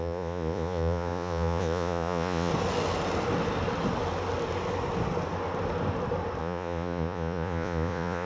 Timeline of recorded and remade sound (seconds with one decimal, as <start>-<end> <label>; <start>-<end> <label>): 0.0-2.5 remade; 2.5-6.4 recorded; 6.4-8.3 remade